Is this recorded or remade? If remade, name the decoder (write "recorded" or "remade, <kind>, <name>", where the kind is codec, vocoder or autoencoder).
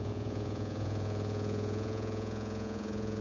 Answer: remade, vocoder, Vocos